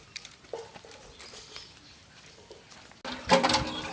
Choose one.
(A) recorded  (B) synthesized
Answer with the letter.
A